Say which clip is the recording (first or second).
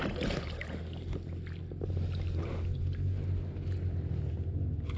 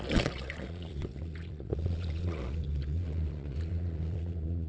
first